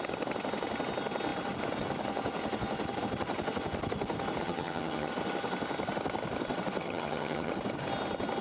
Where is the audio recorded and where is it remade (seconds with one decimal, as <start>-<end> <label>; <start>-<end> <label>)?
0.0-4.4 recorded; 4.4-5.1 remade; 5.1-6.8 recorded; 6.8-7.5 remade; 7.5-8.4 recorded